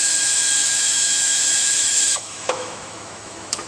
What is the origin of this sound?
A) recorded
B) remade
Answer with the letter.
B